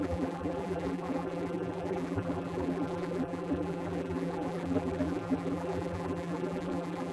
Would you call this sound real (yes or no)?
no